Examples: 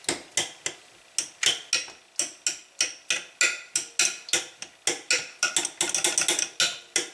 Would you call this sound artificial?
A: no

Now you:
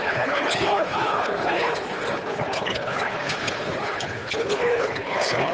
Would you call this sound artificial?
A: yes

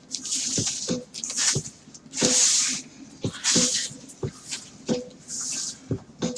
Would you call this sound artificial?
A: yes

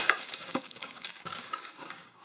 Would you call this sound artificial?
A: yes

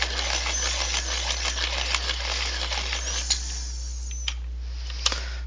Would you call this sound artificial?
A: no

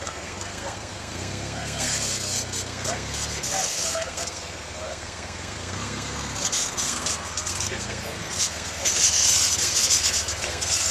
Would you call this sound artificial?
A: yes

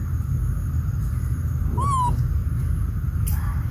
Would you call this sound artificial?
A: no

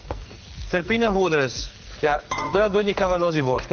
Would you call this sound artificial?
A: yes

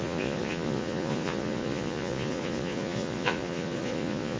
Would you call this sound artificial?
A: yes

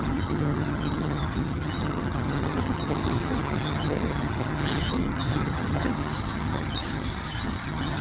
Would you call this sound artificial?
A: yes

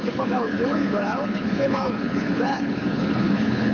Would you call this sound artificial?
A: yes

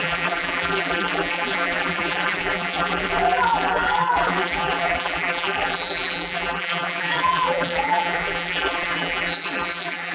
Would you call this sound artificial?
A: yes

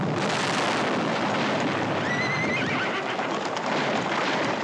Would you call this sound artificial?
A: no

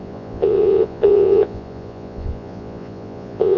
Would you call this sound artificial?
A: yes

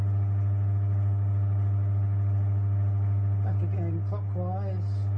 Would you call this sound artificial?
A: no